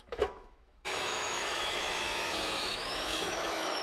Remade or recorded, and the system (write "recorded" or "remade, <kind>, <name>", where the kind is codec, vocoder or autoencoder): remade, autoencoder, DAC-VAE